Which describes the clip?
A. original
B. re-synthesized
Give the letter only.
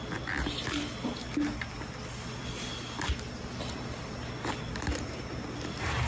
A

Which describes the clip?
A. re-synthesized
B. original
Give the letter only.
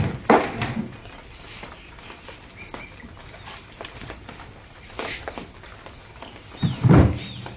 B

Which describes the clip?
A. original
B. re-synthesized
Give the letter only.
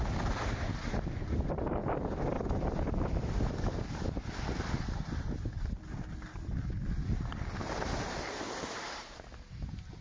A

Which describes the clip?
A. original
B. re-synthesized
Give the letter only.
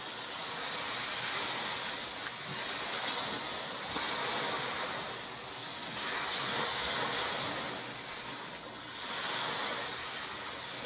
A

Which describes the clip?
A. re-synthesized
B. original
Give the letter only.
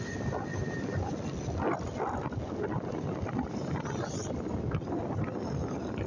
B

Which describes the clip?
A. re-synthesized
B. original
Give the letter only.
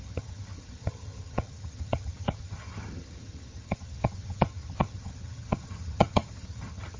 A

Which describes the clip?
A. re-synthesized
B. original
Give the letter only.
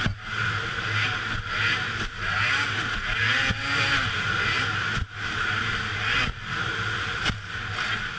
B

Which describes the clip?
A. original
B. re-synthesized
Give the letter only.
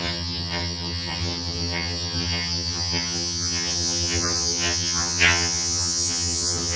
B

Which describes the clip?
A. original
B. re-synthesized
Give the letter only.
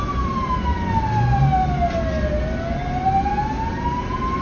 A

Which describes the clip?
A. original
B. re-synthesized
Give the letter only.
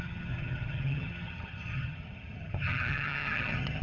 B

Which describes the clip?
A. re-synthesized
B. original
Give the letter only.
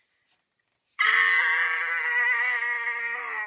B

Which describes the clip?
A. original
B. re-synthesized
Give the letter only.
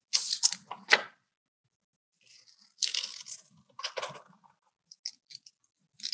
A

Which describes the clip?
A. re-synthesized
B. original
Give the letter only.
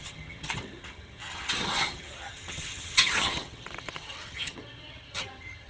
A